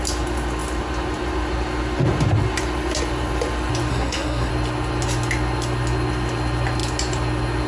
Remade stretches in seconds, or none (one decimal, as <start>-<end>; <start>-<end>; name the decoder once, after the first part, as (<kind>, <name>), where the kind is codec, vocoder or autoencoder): 3.9-4.5 (codec, SNAC)